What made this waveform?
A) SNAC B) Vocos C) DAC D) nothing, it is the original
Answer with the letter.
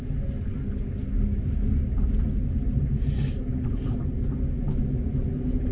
D